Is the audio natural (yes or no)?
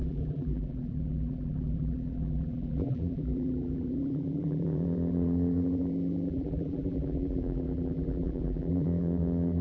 no